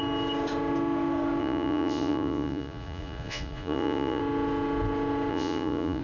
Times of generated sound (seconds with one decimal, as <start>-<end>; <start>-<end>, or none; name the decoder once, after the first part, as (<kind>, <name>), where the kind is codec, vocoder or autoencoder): 1.4-4.2 (vocoder, Vocos); 5.3-6.0